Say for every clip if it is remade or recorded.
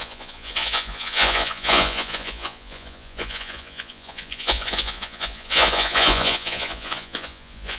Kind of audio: remade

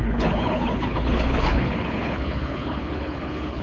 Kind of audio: remade